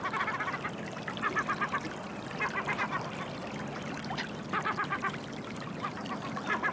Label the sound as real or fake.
real